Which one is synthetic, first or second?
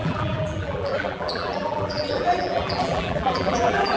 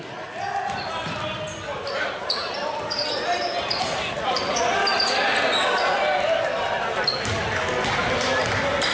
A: first